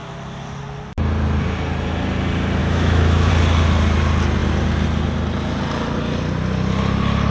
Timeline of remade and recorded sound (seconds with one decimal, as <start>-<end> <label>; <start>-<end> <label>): 0.0-2.6 recorded; 2.6-3.3 remade; 3.3-7.3 recorded